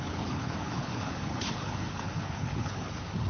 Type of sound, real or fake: fake